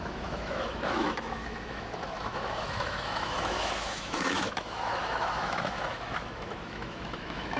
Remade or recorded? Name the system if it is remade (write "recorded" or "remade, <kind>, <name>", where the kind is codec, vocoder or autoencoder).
remade, autoencoder, DAC-VAE